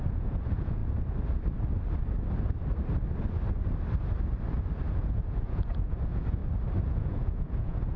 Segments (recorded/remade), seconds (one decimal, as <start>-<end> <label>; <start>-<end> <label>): 0.0-0.8 remade; 0.8-4.9 recorded; 4.9-6.4 remade; 6.4-6.9 recorded; 6.9-8.0 remade